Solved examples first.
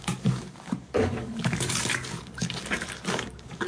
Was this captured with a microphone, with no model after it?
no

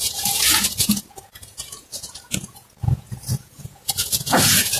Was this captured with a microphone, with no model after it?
no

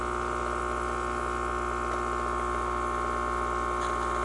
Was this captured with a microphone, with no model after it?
yes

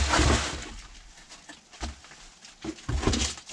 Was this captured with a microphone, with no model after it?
yes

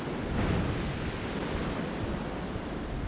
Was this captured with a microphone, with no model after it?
yes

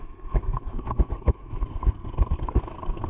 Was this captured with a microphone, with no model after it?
no